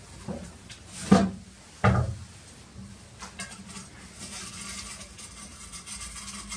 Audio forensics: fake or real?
real